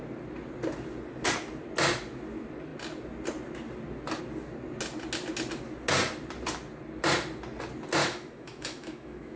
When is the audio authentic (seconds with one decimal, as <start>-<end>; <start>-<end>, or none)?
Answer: 0.0-8.0